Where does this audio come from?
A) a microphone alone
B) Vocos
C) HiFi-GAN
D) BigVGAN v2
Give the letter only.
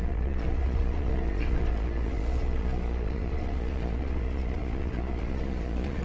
B